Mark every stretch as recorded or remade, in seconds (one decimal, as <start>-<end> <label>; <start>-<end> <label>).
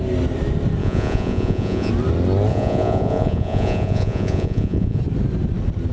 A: 0.0-0.8 recorded; 0.8-1.9 remade; 1.9-2.5 recorded; 2.5-5.0 remade; 5.0-5.9 recorded